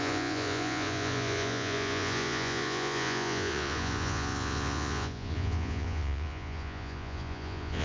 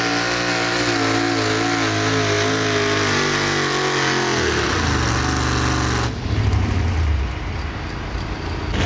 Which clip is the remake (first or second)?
first